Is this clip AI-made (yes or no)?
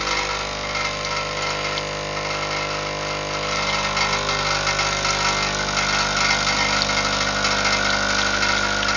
no